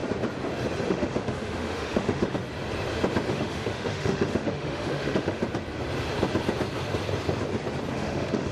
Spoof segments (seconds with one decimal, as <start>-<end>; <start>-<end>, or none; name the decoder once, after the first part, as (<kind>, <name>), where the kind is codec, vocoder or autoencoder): 0.9-2.4 (autoencoder, DAC-VAE); 3.3-5.4; 7.9-8.5